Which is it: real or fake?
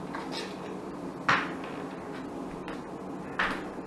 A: real